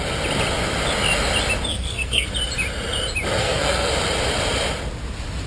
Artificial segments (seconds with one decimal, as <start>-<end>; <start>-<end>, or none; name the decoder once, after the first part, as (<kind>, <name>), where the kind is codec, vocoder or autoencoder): 1.7-2.3 (codec, SNAC); 3.4-3.9